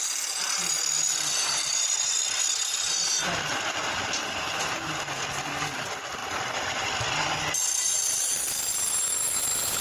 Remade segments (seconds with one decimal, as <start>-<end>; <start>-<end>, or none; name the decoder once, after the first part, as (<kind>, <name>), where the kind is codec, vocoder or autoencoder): none